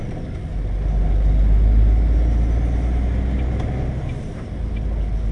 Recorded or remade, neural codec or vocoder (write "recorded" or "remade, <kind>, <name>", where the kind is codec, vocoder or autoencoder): recorded